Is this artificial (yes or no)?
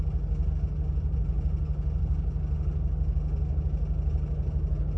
no